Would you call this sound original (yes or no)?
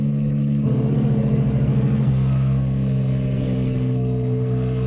no